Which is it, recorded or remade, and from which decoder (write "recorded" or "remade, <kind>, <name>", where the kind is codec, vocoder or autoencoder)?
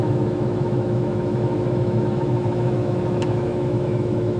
remade, autoencoder, DAC-VAE